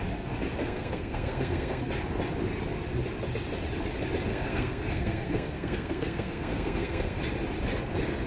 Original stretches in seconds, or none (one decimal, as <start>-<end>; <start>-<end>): 0.0-0.6; 1.8-4.3; 7.2-8.3